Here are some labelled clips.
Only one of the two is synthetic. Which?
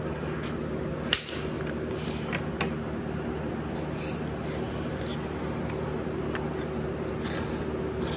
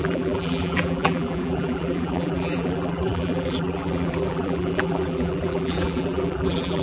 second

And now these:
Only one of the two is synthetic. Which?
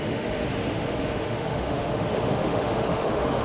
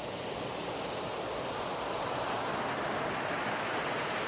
first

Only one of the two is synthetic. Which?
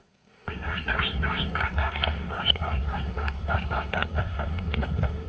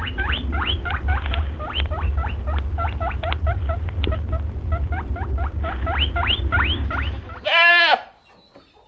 first